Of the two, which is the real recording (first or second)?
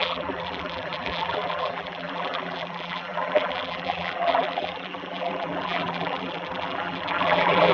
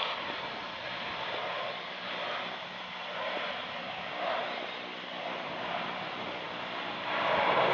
second